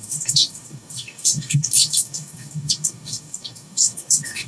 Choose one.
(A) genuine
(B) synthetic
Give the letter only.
B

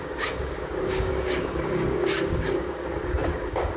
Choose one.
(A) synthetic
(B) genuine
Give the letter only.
A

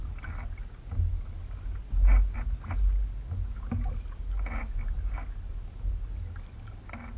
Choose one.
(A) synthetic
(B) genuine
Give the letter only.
B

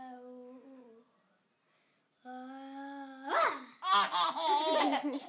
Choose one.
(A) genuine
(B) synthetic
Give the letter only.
A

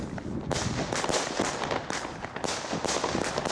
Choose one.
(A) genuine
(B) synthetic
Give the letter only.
A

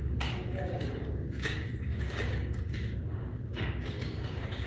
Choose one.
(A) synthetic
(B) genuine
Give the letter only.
A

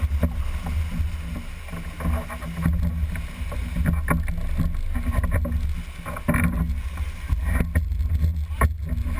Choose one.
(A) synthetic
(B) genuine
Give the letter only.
B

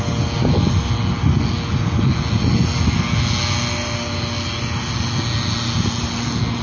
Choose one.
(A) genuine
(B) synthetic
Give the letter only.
A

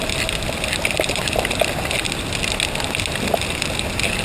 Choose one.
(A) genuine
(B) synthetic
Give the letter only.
A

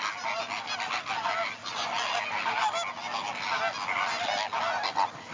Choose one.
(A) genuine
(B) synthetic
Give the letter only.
A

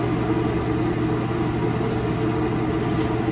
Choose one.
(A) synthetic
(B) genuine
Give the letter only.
B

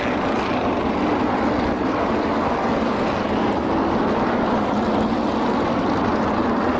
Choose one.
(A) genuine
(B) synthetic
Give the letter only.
A